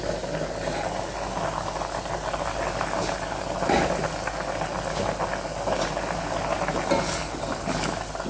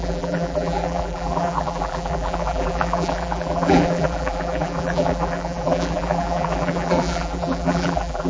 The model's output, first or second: second